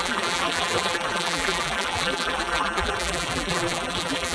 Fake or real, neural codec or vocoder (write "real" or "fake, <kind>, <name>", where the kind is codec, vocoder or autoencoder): fake, vocoder, BigVGAN v2